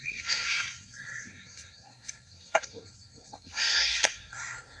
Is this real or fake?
fake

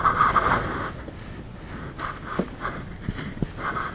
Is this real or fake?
real